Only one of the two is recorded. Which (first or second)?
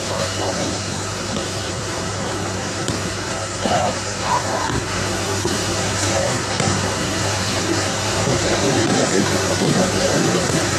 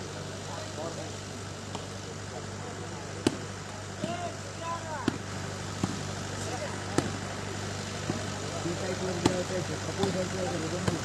second